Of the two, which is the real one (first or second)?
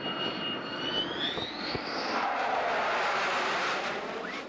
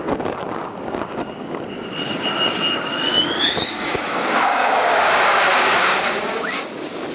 first